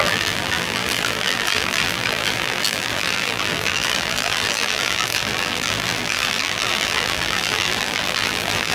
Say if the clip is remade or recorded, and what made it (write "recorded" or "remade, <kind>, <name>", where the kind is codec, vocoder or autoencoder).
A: remade, vocoder, BigVGAN v2